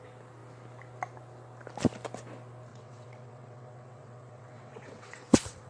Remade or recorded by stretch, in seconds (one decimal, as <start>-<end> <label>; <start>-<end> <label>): 0.0-2.7 recorded; 2.7-5.7 remade